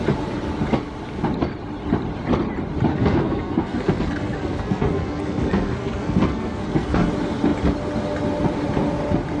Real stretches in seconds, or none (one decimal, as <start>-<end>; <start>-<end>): 0.0-2.9; 7.1-9.4